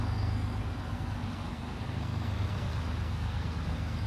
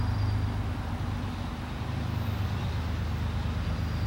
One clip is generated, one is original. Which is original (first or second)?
second